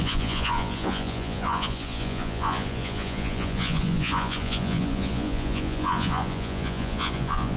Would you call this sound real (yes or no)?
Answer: no